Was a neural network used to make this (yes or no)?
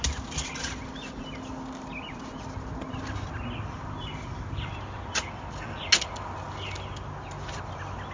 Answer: no